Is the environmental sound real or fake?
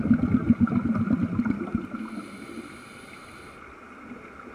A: real